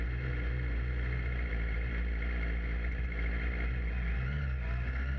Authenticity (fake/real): real